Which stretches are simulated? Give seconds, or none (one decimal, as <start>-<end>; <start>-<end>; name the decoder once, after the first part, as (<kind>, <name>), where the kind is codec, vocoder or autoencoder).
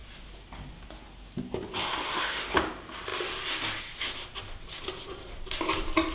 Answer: 2.0-2.5 (autoencoder, DAC-VAE)